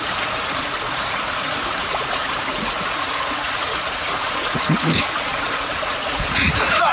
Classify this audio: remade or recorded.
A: remade